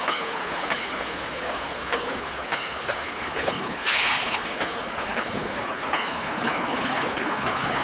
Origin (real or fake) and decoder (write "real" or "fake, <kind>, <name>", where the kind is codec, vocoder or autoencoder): fake, codec, HILCodec